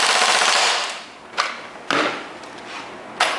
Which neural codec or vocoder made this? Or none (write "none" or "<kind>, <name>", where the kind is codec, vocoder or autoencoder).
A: none